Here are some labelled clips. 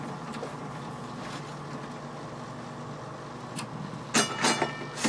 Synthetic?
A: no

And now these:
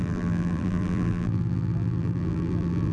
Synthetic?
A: yes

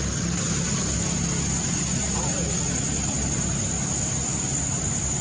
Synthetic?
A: no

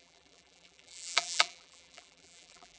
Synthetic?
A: yes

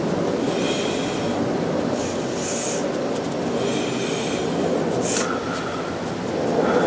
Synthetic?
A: no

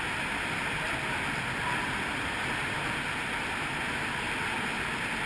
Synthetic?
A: no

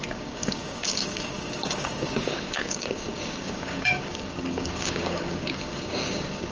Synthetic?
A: yes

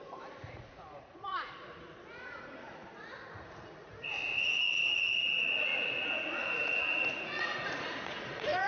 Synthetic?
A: yes